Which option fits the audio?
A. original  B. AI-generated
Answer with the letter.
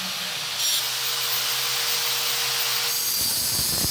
A